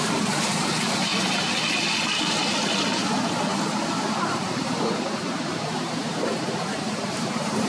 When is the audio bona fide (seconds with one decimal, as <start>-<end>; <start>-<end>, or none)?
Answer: 0.0-3.5